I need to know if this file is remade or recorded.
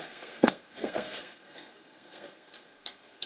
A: remade